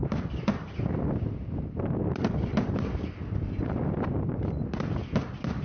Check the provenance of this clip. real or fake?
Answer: real